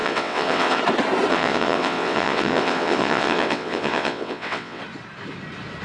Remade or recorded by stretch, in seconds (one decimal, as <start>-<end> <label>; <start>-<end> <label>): 0.0-0.8 remade; 0.8-1.3 recorded; 1.3-4.8 remade; 4.8-5.8 recorded